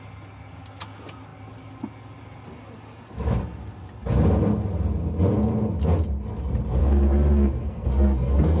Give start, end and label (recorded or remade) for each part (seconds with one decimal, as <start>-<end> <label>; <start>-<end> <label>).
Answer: 0.0-6.8 recorded; 6.8-8.6 remade